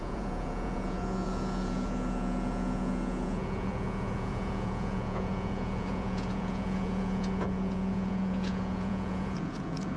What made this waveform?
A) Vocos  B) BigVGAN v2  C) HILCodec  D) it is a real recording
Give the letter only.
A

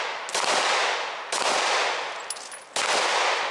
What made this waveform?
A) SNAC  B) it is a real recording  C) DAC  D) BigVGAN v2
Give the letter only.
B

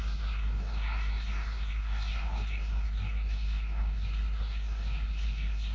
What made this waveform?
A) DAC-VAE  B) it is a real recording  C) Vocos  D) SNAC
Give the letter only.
D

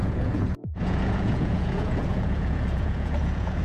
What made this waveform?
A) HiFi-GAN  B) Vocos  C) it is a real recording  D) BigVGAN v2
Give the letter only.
B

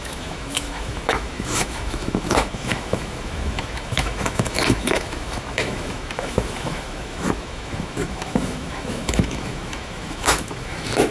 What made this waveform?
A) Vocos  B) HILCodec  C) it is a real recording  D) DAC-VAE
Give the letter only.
D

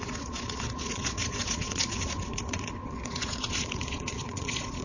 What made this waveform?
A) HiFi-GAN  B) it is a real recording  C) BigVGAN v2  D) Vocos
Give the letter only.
D